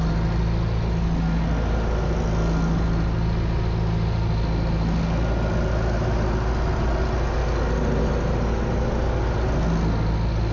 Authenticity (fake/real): real